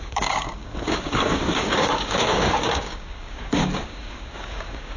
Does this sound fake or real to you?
fake